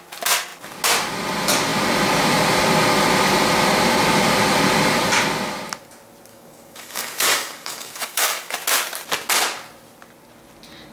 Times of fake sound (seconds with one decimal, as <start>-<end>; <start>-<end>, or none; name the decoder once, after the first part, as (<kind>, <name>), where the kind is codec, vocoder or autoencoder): 6.3-8.5 (codec, DAC)